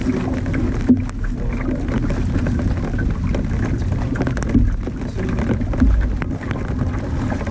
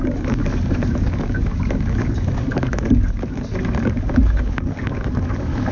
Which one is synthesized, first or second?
second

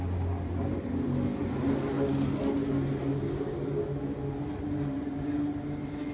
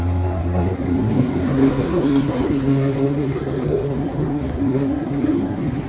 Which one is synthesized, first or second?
second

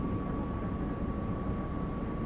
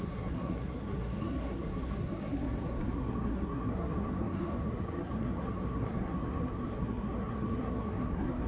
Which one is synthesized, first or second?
second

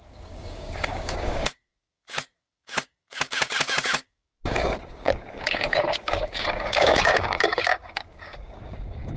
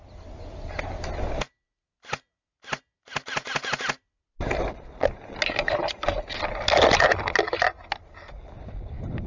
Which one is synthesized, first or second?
first